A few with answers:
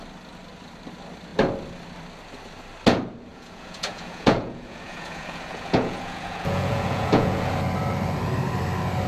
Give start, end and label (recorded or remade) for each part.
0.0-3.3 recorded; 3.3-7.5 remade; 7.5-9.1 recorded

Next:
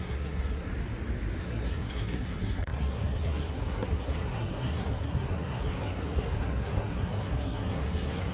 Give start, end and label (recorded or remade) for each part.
0.0-0.7 remade; 0.7-1.4 recorded; 1.4-8.3 remade